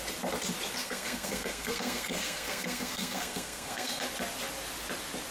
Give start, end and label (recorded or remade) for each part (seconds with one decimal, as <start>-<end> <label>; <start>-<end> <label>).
0.0-0.8 recorded; 0.8-4.0 remade; 4.0-5.3 recorded